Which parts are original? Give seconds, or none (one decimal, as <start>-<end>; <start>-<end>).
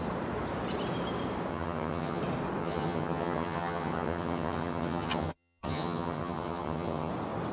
0.0-1.5; 2.2-2.6; 7.1-7.5